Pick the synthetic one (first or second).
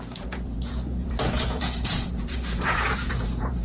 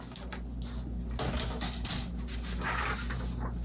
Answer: first